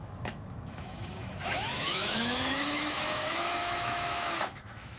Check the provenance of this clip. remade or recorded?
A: remade